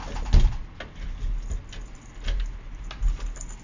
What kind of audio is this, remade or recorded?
recorded